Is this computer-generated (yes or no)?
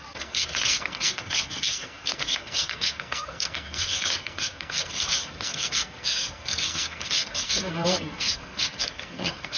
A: yes